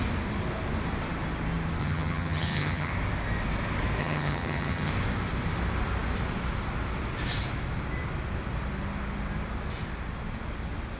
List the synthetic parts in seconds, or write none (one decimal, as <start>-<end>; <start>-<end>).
1.8-2.9; 4.0-4.9